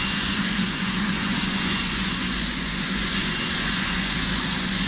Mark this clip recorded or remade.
remade